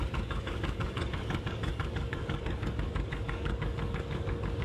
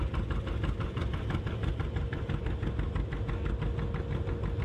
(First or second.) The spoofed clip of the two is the first